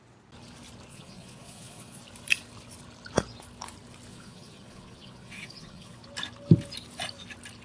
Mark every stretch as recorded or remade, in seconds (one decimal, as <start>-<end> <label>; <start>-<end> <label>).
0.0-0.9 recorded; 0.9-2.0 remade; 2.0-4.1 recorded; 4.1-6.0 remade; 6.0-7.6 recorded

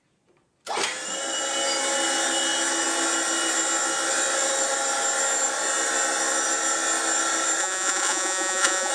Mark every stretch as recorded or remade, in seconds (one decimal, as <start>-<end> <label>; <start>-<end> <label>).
0.0-7.6 recorded; 7.6-8.9 remade

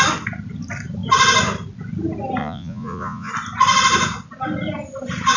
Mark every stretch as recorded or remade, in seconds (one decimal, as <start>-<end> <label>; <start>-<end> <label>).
0.0-2.4 recorded; 2.4-3.3 remade; 3.3-5.4 recorded